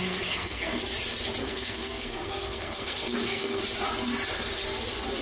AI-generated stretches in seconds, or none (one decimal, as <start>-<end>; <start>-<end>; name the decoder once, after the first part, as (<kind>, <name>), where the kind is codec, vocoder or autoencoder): 0.0-0.8 (codec, SNAC); 1.4-3.6